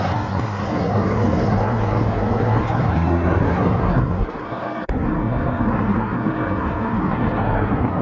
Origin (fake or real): fake